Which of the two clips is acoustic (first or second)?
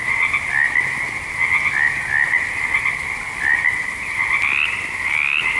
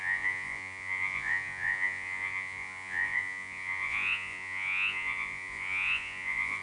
first